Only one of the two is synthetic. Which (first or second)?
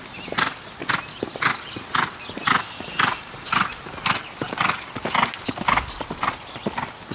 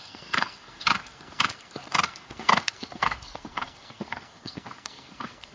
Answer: second